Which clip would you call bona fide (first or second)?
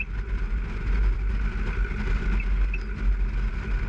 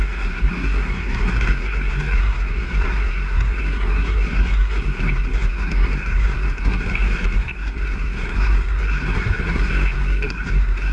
first